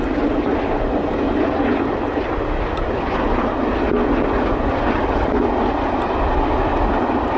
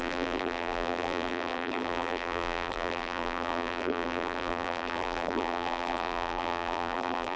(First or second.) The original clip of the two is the first